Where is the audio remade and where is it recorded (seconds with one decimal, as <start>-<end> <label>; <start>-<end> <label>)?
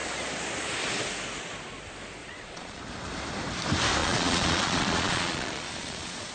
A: 0.0-2.2 recorded; 2.2-2.8 remade; 2.8-4.0 recorded; 4.0-6.3 remade